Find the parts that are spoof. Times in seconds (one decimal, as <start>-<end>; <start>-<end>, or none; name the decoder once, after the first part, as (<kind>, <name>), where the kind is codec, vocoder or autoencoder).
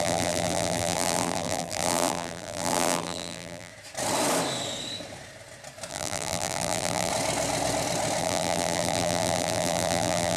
0.0-3.7 (vocoder, BigVGAN v2); 5.9-7.1; 8.2-10.4